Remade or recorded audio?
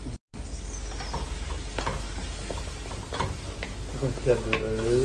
recorded